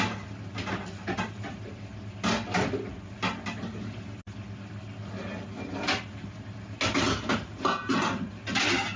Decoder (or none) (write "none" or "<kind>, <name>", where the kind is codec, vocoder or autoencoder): none